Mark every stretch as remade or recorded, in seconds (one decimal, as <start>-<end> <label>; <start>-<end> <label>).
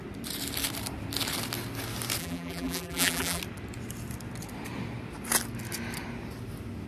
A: 0.0-2.2 recorded; 2.2-3.4 remade; 3.4-6.9 recorded